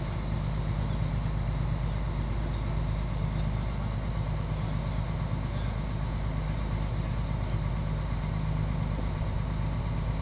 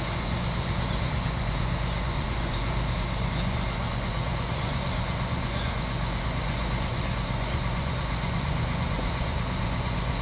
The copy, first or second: second